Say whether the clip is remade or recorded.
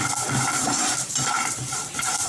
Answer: remade